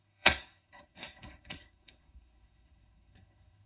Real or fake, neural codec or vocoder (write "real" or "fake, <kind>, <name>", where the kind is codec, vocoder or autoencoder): fake, codec, SNAC